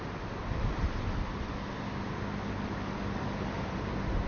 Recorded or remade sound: recorded